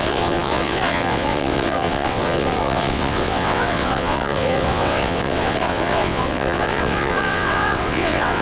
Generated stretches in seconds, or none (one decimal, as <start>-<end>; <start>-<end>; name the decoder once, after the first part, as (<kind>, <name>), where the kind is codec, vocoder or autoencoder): 0.0-8.4 (vocoder, WaveNeXt)